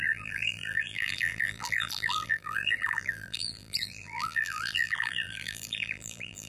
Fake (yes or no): yes